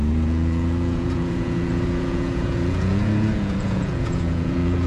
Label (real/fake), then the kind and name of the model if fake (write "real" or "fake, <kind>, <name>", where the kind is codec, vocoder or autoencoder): fake, vocoder, Vocos